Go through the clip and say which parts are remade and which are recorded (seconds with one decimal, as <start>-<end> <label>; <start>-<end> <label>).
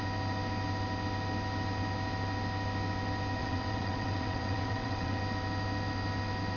0.0-3.4 recorded; 3.4-5.2 remade; 5.2-6.6 recorded